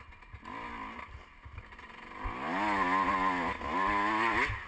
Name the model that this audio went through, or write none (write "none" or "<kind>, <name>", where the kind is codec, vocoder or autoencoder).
none